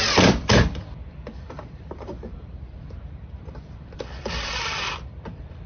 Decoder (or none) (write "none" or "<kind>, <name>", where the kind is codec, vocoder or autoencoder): vocoder, BigVGAN v2